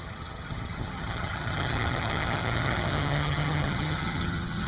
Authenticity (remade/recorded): remade